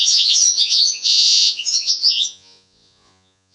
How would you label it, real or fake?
fake